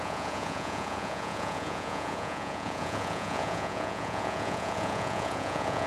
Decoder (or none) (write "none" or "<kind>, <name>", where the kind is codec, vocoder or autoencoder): vocoder, Vocos